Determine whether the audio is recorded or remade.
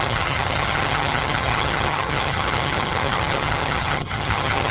remade